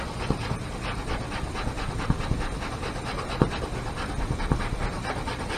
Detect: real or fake real